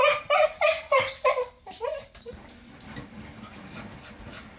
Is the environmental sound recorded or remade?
recorded